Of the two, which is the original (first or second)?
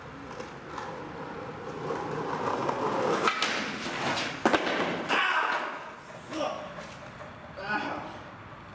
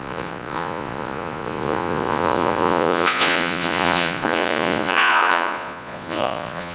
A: first